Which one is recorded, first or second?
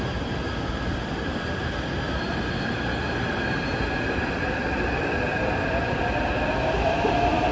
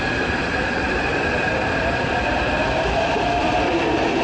first